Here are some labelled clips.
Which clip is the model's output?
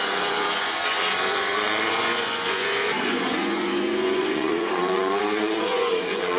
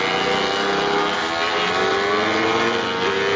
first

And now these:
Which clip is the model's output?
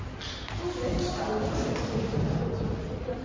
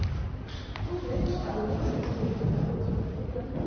second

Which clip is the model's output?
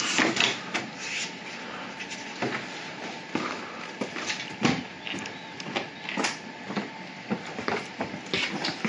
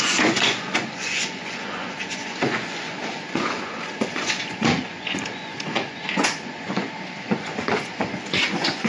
second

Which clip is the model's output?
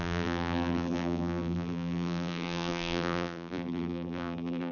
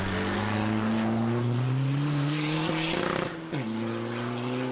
first